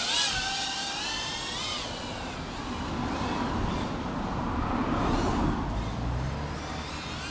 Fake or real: real